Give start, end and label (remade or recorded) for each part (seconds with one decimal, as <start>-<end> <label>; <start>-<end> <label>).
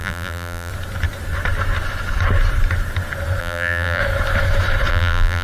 0.0-0.7 remade; 0.7-3.4 recorded; 3.4-4.0 remade; 4.0-4.9 recorded; 4.9-5.4 remade